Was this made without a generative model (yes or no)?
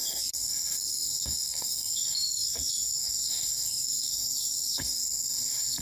no